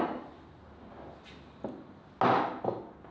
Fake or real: real